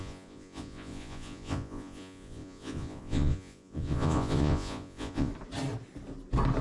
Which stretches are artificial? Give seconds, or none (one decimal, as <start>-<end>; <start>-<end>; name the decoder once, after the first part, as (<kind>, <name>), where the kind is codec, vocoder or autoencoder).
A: 0.0-5.3 (vocoder, Vocos)

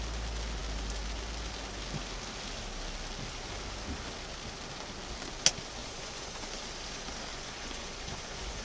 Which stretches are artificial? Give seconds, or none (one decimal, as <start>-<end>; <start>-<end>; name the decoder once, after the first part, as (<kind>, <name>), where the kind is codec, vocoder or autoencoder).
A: 5.8-6.6 (vocoder, Vocos); 7.3-8.6

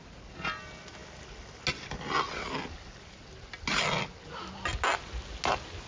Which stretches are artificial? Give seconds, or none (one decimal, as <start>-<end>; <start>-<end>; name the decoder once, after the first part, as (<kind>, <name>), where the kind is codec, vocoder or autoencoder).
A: none

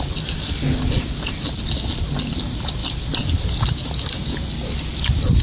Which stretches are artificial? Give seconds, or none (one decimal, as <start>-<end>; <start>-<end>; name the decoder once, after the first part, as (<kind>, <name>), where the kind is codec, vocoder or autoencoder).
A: none

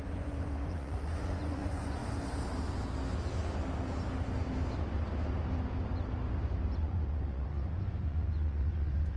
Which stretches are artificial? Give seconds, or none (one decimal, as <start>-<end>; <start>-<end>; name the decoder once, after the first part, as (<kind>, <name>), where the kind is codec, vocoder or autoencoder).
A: 0.0-2.0 (vocoder, Vocos); 6.8-9.2

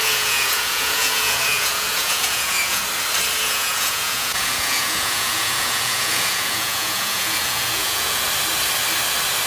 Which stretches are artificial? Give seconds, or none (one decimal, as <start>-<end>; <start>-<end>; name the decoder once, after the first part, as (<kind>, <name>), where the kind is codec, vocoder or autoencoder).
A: 0.0-2.8 (vocoder, Vocos); 3.4-8.2

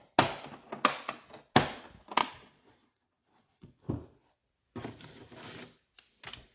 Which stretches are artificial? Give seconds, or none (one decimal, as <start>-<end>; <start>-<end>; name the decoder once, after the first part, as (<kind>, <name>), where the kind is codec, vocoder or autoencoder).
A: 2.2-3.9 (vocoder, Vocos)